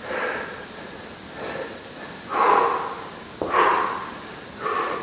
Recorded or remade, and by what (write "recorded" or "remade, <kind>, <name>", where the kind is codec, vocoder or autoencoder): recorded